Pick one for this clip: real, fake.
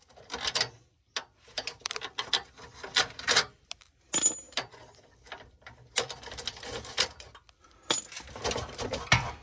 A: real